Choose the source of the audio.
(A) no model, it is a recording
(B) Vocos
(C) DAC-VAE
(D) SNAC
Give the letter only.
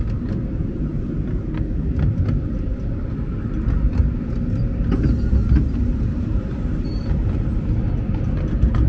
A